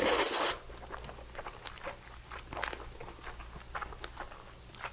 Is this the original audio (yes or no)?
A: yes